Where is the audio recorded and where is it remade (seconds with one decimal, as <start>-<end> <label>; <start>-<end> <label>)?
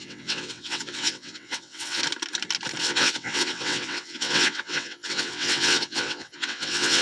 0.0-2.0 remade; 2.0-2.8 recorded; 2.8-7.0 remade